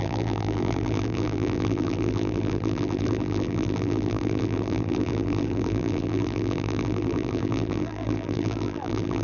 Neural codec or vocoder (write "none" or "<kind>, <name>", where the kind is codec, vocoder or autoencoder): vocoder, BigVGAN v2